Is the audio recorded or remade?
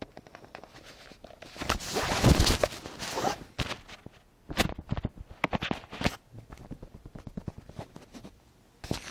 recorded